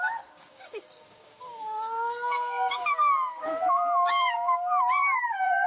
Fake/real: fake